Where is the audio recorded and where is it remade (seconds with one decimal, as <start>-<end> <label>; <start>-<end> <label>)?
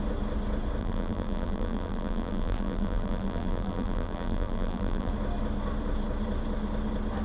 0.0-0.8 recorded; 0.8-5.1 remade; 5.1-7.2 recorded